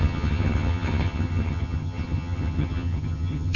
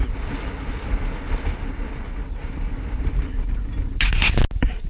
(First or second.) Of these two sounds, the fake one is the first